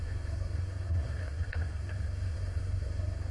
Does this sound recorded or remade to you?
remade